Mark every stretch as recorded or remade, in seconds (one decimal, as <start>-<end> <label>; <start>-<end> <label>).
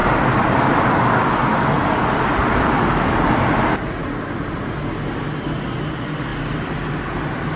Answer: 0.0-1.4 recorded; 1.4-2.8 remade; 2.8-4.0 recorded; 4.0-4.8 remade; 4.8-6.3 recorded; 6.3-6.9 remade; 6.9-7.6 recorded